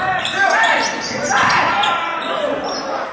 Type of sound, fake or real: real